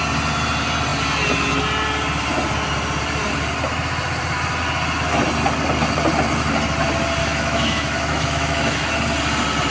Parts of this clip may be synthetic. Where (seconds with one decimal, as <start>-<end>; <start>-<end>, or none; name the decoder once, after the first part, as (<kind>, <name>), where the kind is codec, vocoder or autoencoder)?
7.2-8.9 (autoencoder, DAC-VAE)